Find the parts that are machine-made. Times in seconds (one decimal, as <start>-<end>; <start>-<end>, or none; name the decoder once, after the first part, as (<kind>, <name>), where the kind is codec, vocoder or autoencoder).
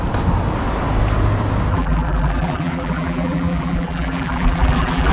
1.7-5.1 (vocoder, BigVGAN v2)